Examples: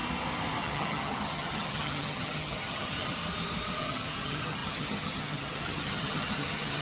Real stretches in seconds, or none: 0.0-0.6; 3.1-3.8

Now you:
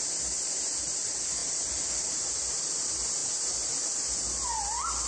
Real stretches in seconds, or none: 0.0-5.1